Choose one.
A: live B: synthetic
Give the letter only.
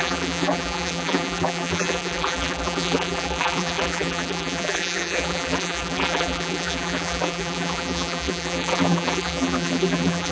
B